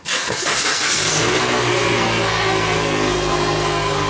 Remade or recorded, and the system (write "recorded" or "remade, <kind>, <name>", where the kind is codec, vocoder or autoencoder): remade, codec, SNAC